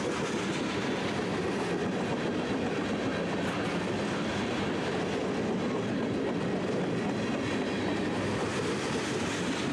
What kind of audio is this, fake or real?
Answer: real